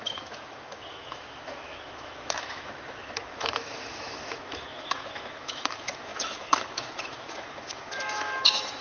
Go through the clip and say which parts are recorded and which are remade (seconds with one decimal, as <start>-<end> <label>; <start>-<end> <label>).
0.0-8.8 remade